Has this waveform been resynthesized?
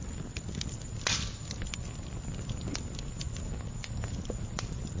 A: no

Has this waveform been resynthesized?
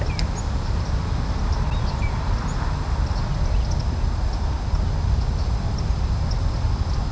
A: no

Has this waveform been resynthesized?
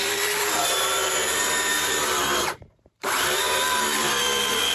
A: yes